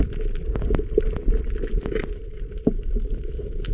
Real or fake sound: real